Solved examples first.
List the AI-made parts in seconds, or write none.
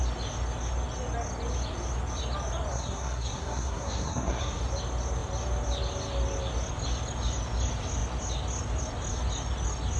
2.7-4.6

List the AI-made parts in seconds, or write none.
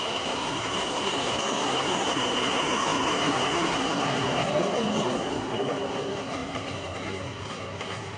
0.0-8.2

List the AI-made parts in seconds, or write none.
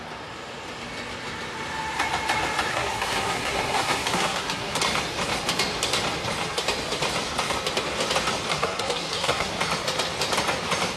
2.7-4.8; 8.5-9.5